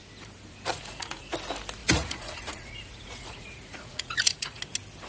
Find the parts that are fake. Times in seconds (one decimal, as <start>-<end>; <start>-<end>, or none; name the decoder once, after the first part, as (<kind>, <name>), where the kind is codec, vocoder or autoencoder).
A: 0.7-1.3 (vocoder, Vocos); 1.8-4.6